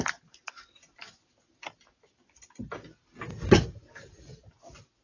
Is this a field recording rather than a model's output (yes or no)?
yes